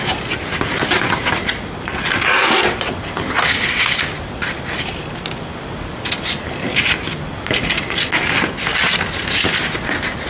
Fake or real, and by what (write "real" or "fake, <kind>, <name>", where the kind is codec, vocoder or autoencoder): real